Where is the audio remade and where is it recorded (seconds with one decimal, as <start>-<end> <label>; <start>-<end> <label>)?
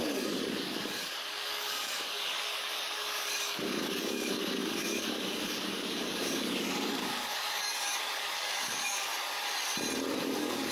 0.0-9.1 remade; 9.1-10.1 recorded; 10.1-10.7 remade